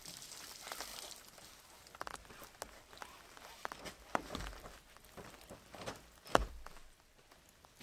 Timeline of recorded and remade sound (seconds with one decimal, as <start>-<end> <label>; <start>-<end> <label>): 0.0-7.8 recorded